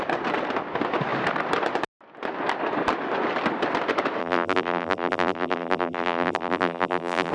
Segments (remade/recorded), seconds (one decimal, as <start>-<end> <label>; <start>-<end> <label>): 0.0-4.2 recorded; 4.2-7.3 remade